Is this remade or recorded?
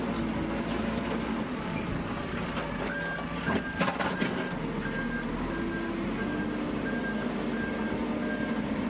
recorded